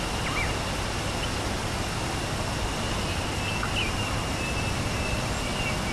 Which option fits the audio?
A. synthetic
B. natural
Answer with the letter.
B